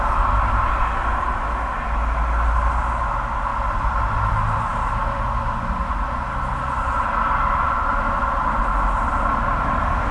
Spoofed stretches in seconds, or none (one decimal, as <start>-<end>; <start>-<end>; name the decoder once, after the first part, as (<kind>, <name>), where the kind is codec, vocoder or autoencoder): 3.5-4.3 (vocoder, BigVGAN v2)